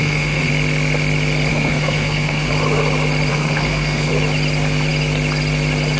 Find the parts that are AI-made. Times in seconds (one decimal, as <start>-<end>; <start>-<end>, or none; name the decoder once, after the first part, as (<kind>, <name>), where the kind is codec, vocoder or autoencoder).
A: 0.0-0.5 (codec, SNAC); 1.5-2.5; 3.3-4.1